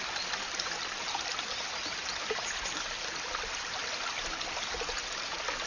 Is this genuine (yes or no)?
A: yes